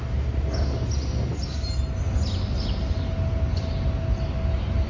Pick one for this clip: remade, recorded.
recorded